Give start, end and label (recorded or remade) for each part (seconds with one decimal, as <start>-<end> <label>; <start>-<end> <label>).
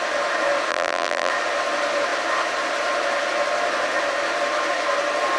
0.0-0.7 recorded; 0.7-1.3 remade; 1.3-5.4 recorded